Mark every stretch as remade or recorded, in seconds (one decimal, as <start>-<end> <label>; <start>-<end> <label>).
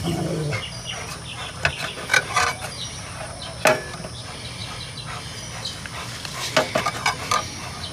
0.0-2.1 recorded; 2.1-3.4 remade; 3.4-7.9 recorded